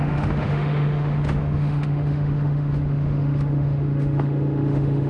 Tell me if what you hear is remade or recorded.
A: remade